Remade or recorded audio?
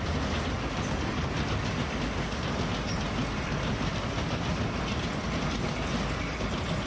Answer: recorded